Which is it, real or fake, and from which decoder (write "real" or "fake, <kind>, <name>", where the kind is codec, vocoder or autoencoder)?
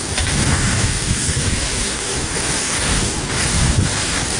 fake, codec, DAC